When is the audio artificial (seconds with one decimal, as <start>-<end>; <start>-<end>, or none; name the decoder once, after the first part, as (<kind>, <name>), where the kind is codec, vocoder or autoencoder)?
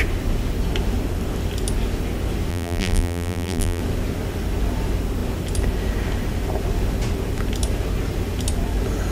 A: 2.5-3.8 (vocoder, BigVGAN v2)